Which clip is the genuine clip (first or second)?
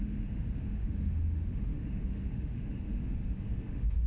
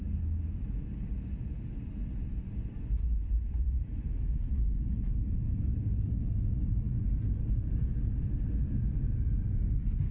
second